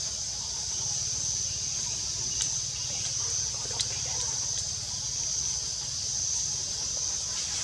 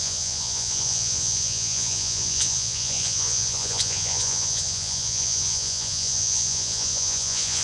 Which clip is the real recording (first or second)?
first